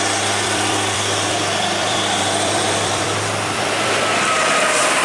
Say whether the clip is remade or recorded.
remade